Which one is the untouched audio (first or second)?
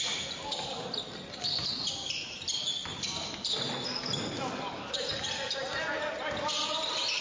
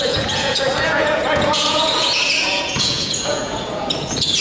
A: first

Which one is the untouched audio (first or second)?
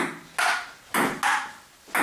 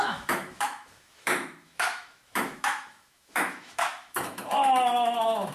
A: first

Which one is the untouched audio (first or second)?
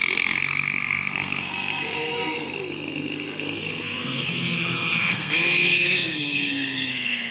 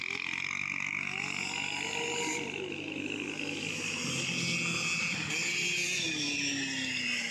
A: second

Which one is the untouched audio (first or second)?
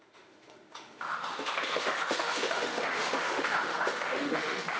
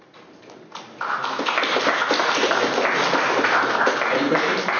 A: second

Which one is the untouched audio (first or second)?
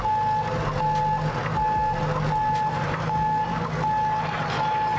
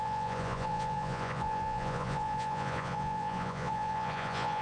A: first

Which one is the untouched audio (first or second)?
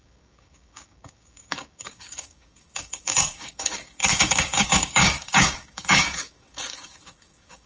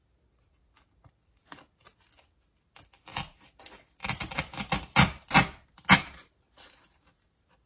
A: second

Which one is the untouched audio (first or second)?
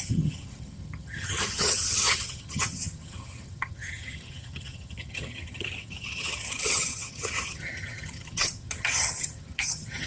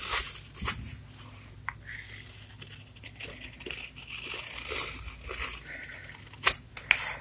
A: second